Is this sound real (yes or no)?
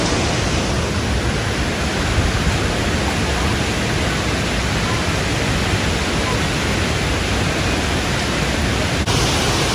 yes